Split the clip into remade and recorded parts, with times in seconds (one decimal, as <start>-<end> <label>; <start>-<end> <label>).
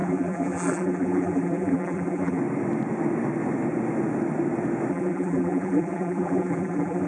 0.0-2.4 remade; 2.4-4.9 recorded; 4.9-7.1 remade